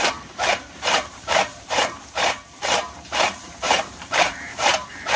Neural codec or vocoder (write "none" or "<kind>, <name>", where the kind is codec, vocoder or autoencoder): vocoder, BigVGAN v2